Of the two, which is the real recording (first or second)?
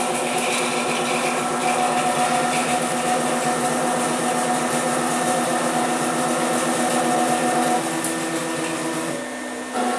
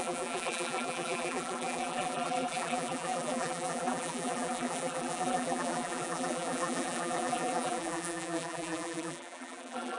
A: first